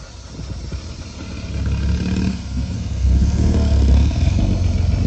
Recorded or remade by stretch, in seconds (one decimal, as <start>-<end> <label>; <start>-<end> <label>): 0.0-2.3 recorded; 2.3-4.4 remade; 4.4-5.1 recorded